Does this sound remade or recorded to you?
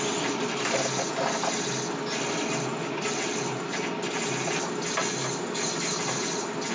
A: recorded